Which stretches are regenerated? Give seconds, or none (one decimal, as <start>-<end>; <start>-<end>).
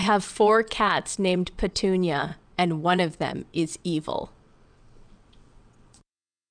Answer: 0.0-6.5